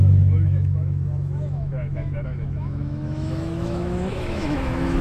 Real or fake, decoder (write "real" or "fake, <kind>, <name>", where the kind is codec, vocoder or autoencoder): fake, autoencoder, DAC-VAE